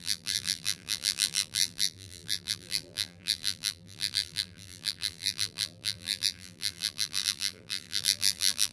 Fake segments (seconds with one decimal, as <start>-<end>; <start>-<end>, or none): 0.0-8.7